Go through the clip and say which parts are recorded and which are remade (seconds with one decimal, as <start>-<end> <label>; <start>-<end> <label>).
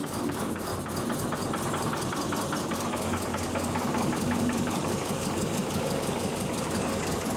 0.0-0.7 remade; 0.7-2.6 recorded; 2.6-7.4 remade